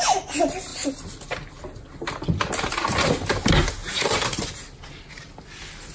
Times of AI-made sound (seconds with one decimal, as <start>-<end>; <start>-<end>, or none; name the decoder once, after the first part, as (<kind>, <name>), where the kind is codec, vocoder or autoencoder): 3.8-5.0 (vocoder, BigVGAN v2)